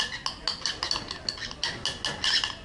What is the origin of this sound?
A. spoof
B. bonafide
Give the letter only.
B